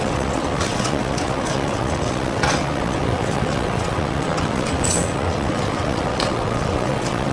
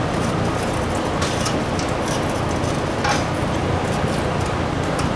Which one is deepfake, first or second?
first